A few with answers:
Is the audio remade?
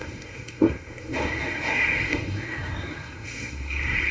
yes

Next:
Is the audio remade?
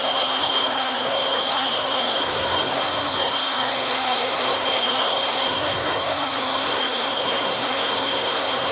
yes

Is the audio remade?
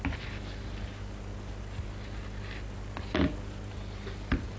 no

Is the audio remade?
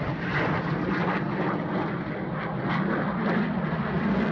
no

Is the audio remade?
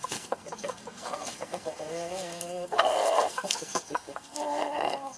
yes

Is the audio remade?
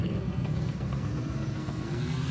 yes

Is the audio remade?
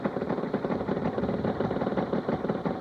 no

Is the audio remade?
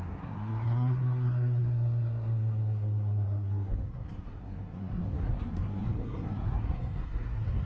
yes